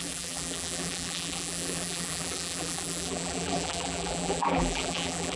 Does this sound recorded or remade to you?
remade